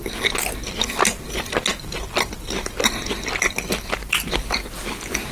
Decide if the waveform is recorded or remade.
recorded